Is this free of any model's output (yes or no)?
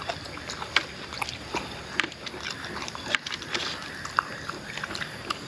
yes